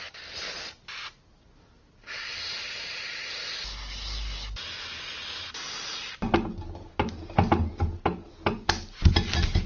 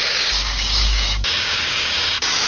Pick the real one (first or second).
first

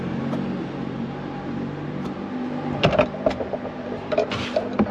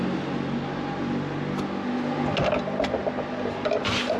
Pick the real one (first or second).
second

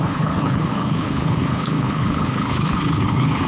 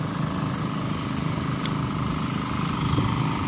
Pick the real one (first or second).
second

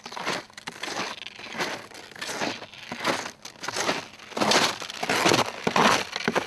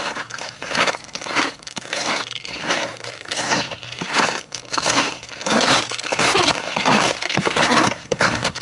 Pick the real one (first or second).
first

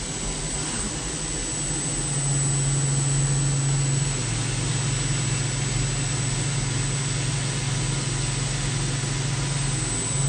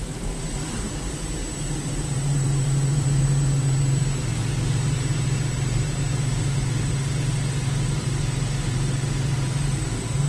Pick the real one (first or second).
first